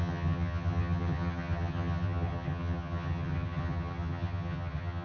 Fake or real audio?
fake